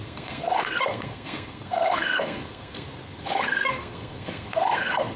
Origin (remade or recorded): remade